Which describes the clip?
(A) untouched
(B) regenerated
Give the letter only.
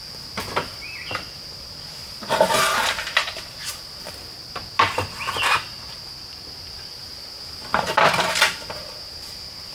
A